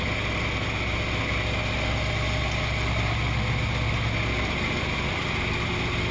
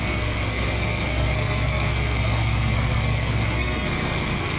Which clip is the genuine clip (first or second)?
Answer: first